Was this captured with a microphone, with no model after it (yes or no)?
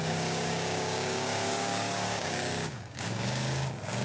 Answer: no